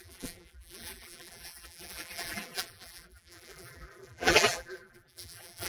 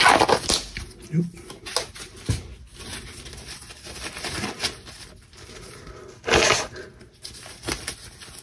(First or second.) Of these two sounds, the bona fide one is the second